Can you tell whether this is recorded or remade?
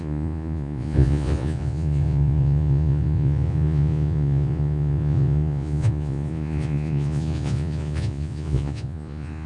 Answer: remade